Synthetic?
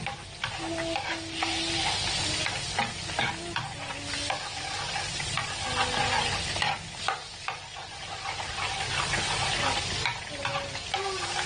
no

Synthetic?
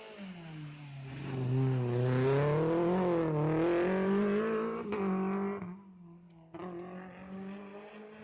no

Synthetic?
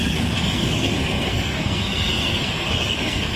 yes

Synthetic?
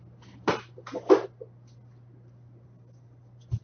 no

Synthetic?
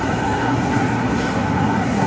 yes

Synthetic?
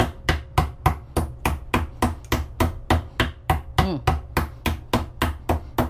no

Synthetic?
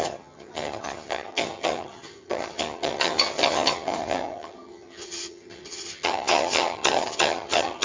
yes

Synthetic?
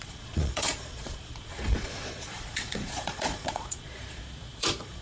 yes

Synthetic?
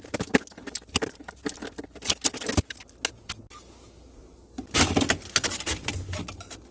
no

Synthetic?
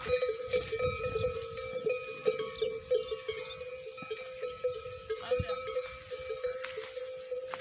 no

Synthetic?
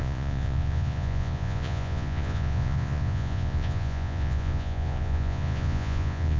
yes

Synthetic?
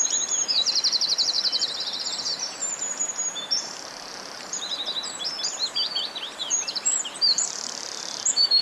yes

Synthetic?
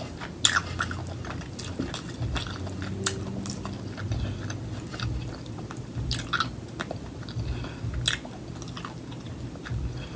no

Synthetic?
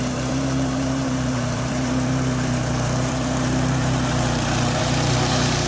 yes